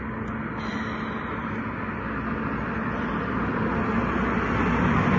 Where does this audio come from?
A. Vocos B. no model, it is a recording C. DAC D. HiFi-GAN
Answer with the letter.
B